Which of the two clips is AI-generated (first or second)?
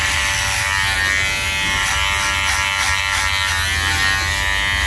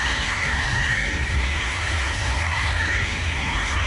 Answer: second